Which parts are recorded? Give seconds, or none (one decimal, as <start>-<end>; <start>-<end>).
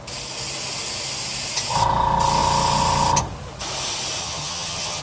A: 0.0-4.2